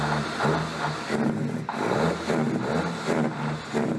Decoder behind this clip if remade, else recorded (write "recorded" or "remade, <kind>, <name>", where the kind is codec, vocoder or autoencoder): recorded